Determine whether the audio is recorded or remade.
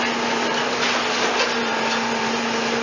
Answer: recorded